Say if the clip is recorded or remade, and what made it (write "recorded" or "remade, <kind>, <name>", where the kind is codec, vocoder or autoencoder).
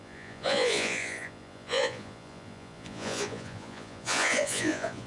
remade, vocoder, Vocos